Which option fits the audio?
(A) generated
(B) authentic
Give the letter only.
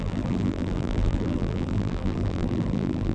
A